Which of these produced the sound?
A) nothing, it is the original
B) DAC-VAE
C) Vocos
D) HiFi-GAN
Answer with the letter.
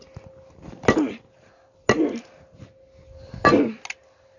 A